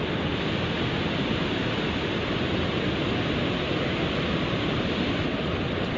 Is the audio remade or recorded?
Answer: recorded